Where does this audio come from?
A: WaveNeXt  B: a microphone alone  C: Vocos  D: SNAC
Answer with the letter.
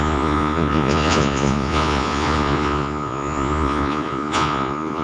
C